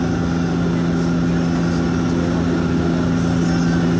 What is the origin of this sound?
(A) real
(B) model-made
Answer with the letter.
A